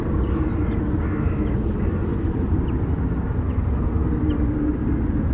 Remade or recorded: recorded